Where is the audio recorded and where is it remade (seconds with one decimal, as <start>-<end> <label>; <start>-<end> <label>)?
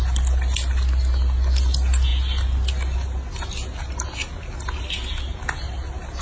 0.0-6.2 recorded